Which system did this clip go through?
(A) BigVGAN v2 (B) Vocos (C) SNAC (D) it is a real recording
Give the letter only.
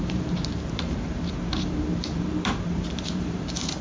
A